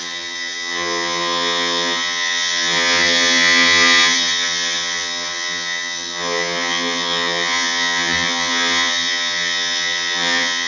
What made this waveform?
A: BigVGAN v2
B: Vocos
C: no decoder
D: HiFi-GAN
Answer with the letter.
D